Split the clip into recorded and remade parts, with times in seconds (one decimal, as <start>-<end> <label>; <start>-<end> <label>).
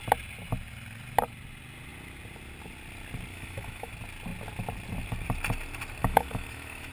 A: 0.0-3.3 recorded; 3.3-3.9 remade; 3.9-6.0 recorded; 6.0-6.9 remade